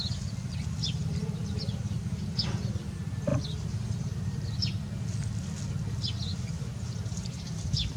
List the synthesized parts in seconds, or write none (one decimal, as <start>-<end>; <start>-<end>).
6.3-7.4